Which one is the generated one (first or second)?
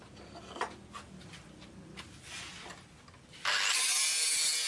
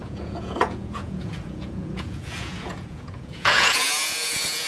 second